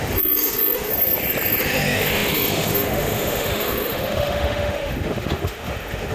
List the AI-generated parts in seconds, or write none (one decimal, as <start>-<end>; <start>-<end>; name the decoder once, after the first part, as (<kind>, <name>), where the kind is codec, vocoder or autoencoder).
0.0-0.9 (autoencoder, DAC-VAE); 1.6-6.1

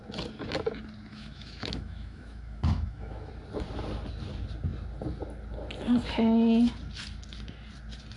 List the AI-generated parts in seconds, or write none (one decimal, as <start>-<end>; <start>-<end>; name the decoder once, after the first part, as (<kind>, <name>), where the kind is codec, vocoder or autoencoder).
1.1-3.3 (autoencoder, DAC-VAE)

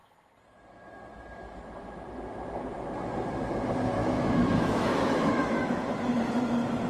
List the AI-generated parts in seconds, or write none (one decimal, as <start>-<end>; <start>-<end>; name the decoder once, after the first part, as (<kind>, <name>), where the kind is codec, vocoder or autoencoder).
4.0-5.8 (autoencoder, DAC-VAE)

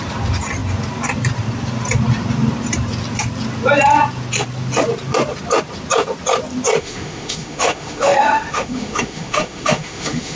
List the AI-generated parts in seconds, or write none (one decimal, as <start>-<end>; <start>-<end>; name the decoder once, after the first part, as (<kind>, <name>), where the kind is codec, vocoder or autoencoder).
6.8-10.4 (autoencoder, DAC-VAE)

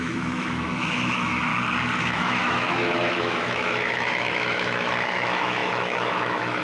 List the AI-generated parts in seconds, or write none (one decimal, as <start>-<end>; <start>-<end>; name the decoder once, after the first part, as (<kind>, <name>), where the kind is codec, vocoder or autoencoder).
0.0-1.5 (autoencoder, DAC-VAE); 2.0-6.6

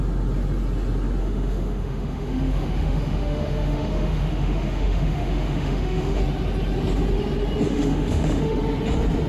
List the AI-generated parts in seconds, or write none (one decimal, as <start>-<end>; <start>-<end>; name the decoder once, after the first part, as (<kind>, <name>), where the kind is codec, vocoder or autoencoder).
1.2-6.2 (autoencoder, DAC-VAE); 7.7-8.6

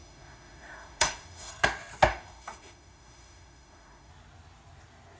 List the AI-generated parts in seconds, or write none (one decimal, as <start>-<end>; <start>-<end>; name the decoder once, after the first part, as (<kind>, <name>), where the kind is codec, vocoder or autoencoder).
0.0-1.5 (autoencoder, DAC-VAE); 2.1-4.1

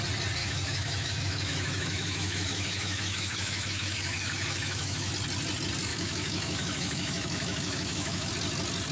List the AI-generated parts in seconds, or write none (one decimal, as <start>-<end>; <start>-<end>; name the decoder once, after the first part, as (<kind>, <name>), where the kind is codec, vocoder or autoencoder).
0.4-5.1 (autoencoder, DAC-VAE); 5.9-8.3